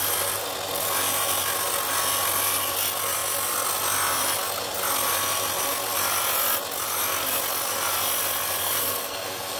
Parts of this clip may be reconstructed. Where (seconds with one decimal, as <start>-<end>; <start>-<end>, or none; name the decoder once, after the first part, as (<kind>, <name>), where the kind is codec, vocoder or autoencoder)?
8.6-9.6 (codec, SNAC)